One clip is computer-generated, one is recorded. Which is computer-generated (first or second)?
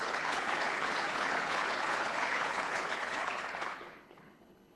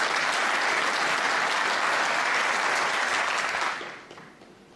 first